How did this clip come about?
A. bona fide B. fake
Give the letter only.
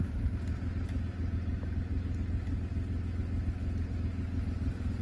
A